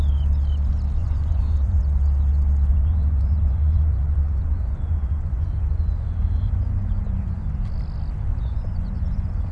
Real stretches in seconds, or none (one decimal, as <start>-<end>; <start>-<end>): 0.0-1.0; 1.8-2.7; 7.4-8.3